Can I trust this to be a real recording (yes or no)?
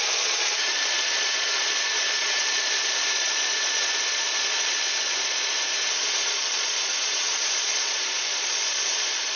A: no